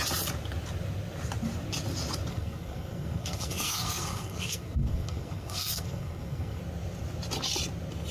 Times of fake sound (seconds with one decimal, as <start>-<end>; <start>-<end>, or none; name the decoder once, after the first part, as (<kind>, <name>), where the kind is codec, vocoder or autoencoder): 2.3-6.6 (codec, SNAC)